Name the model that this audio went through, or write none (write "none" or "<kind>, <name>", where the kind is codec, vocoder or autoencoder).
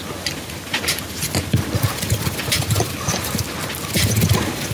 none